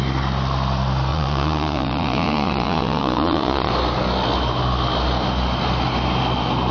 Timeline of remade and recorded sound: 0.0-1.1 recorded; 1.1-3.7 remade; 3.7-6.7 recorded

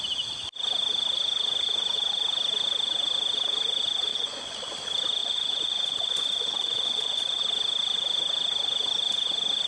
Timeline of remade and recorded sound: 0.0-4.1 recorded; 4.1-4.7 remade; 4.7-5.2 recorded; 5.2-7.4 remade; 7.4-9.7 recorded

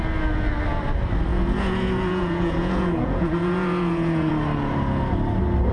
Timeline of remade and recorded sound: 0.0-1.3 recorded; 1.3-4.3 remade; 4.3-5.7 recorded

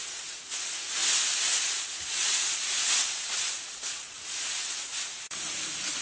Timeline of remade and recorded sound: 0.0-1.0 remade; 1.0-1.5 recorded; 1.5-6.0 remade

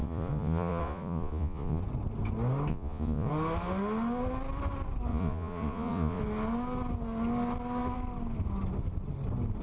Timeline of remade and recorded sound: 0.0-1.8 remade; 1.8-2.7 recorded; 2.7-3.3 remade; 3.3-5.1 recorded; 5.1-6.2 remade; 6.2-9.6 recorded

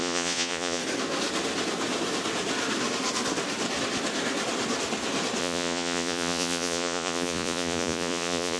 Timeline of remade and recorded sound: 0.0-0.8 remade; 0.8-5.4 recorded; 5.4-8.6 remade

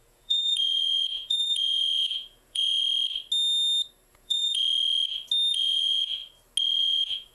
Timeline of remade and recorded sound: 0.0-2.8 remade; 2.8-4.1 recorded; 4.1-4.6 remade; 4.6-5.5 recorded; 5.5-6.2 remade; 6.2-6.8 recorded; 6.8-7.3 remade